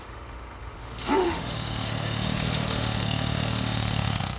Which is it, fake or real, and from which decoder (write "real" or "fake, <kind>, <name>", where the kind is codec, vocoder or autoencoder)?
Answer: fake, autoencoder, DAC-VAE